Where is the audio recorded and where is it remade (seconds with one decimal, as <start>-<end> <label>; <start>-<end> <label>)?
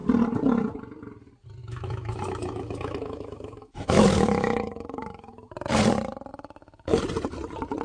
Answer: 0.0-1.6 recorded; 1.6-5.7 remade; 5.7-6.3 recorded; 6.3-7.0 remade; 7.0-7.8 recorded